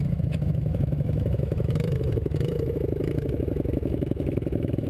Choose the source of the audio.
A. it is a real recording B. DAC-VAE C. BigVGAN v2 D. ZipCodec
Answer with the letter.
B